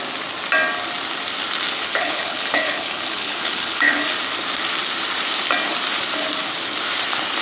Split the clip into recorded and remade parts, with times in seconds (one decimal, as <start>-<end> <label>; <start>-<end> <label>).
0.0-1.8 recorded; 1.8-4.0 remade; 4.0-7.4 recorded